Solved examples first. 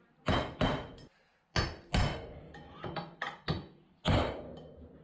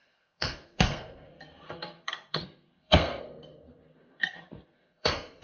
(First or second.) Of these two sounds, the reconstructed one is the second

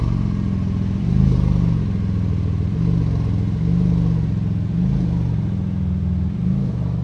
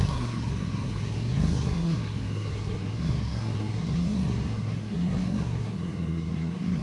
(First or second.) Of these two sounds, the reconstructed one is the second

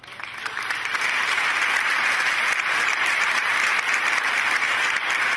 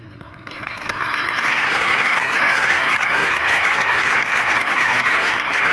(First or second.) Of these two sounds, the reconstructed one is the second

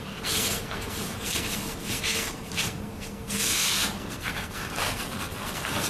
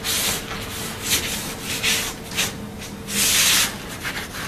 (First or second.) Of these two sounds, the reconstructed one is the first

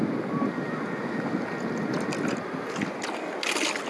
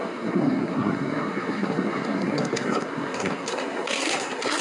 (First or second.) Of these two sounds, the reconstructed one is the second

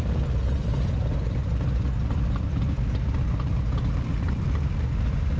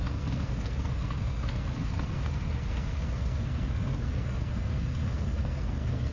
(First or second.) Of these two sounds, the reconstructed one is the second